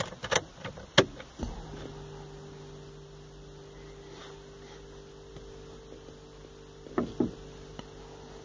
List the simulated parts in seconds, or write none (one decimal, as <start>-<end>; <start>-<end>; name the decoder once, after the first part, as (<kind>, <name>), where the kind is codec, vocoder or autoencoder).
none